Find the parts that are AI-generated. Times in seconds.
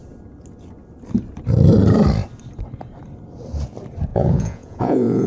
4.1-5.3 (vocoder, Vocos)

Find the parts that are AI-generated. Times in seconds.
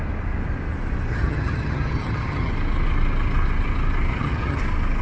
1.1-2.5 (vocoder, HiFi-GAN); 4.1-4.6